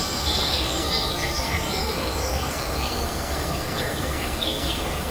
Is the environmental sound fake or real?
fake